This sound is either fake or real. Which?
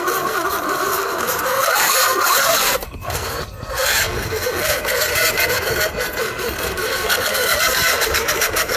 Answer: fake